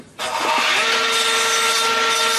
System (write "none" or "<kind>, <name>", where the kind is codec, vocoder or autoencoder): none